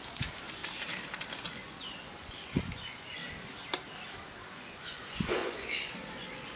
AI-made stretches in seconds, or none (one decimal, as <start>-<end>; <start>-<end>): 0.0-0.6; 1.5-3.2; 4.5-6.6